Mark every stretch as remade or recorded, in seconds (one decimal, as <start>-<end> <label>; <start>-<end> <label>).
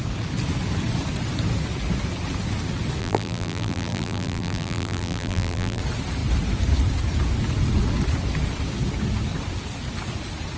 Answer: 0.0-3.0 recorded; 3.0-5.8 remade; 5.8-10.6 recorded